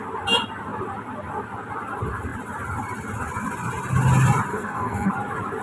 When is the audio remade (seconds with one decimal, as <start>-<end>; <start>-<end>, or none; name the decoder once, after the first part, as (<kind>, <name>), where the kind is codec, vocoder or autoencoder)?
4.5-5.1 (codec, SNAC)